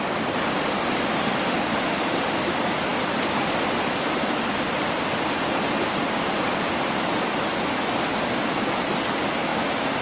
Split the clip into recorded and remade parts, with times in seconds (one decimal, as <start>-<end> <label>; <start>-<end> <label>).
0.0-10.0 remade